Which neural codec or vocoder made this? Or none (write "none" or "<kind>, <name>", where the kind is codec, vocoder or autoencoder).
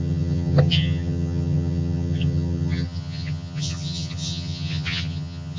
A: vocoder, HiFi-GAN